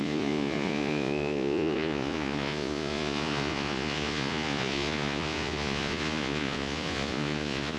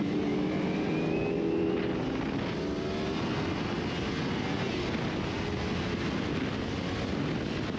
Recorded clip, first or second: second